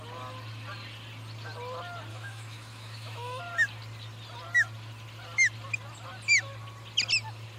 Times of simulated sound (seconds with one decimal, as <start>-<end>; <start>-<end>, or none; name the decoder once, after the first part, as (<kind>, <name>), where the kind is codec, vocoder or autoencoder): 2.1-3.4 (autoencoder, DAC-VAE)